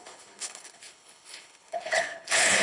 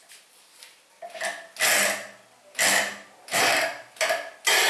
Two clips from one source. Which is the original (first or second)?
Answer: second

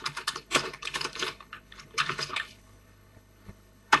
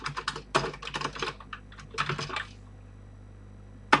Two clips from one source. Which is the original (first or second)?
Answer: second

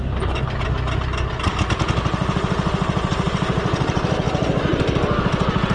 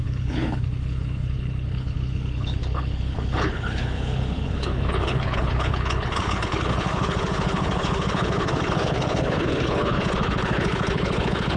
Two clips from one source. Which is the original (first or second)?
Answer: first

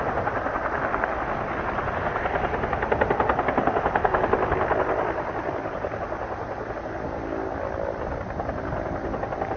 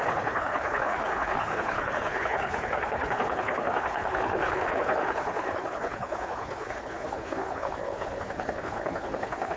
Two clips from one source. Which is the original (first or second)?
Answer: first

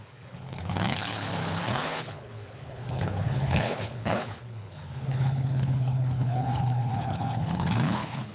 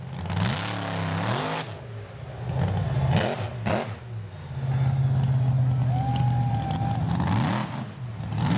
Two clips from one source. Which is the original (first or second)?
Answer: second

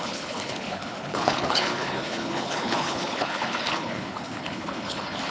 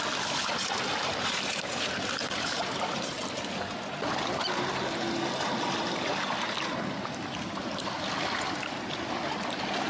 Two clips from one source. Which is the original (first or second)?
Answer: second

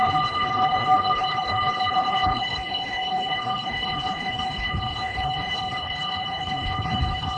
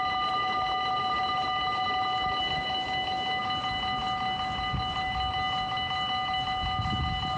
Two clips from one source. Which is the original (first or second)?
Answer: second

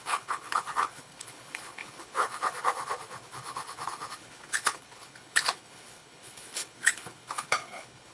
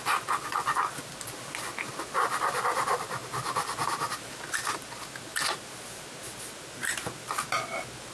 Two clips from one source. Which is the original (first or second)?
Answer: second